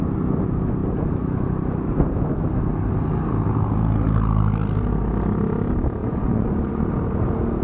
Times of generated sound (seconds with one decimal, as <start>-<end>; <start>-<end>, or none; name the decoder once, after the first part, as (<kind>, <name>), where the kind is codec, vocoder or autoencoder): 6.0-6.8 (vocoder, Vocos)